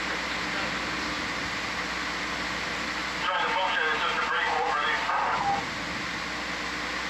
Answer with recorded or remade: recorded